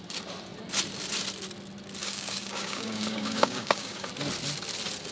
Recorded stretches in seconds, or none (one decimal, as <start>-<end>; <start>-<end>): 0.0-2.0; 4.1-5.1